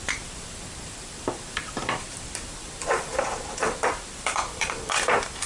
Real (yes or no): no